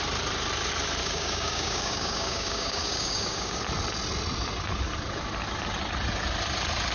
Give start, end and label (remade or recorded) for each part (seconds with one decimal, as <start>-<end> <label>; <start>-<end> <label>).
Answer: 0.0-1.0 recorded; 1.0-3.6 remade; 3.6-6.9 recorded